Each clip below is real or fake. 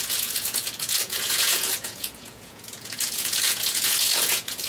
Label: fake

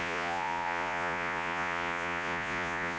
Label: fake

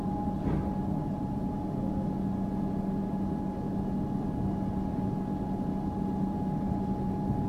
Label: real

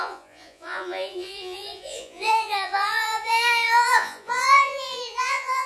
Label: fake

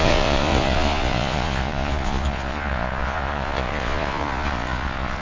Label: fake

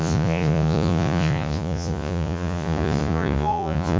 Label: fake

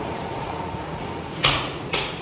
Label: fake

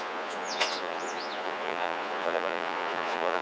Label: fake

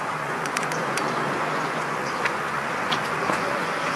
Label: fake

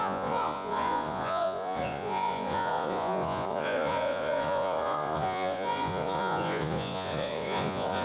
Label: fake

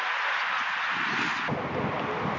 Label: real